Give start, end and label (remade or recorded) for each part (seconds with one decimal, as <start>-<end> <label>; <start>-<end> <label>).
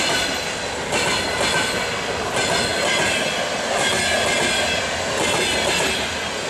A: 0.0-6.5 recorded